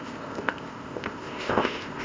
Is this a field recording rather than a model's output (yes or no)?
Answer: no